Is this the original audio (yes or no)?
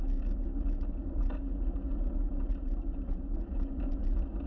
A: yes